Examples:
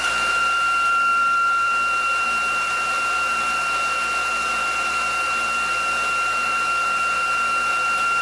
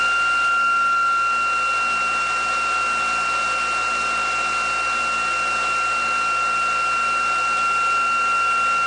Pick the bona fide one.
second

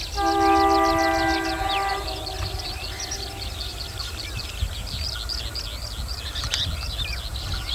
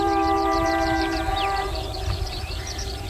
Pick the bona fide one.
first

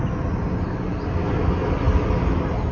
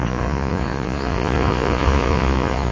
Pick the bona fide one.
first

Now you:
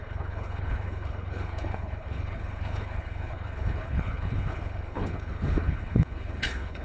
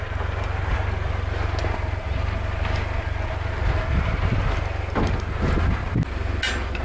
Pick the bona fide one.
second